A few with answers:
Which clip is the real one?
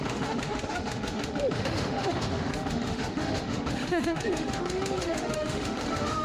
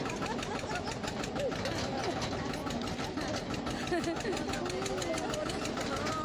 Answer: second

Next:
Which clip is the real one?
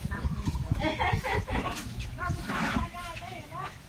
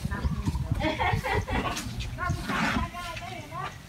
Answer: second